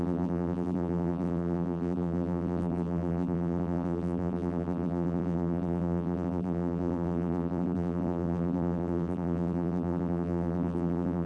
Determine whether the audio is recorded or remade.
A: remade